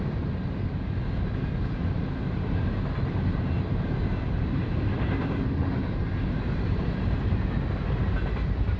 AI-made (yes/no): no